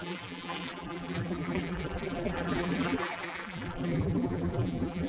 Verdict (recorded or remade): remade